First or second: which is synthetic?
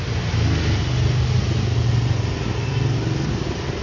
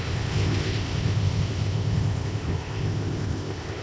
second